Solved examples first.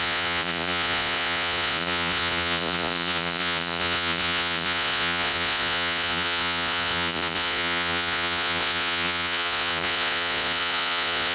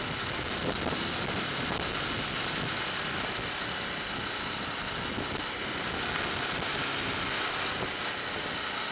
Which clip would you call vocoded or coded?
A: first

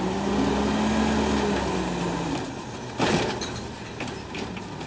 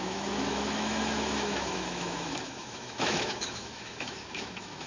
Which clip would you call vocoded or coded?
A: second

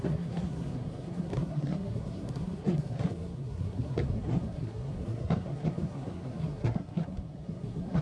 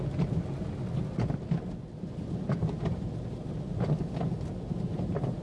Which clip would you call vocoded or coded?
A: first